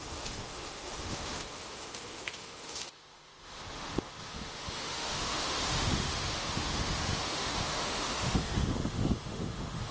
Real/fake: fake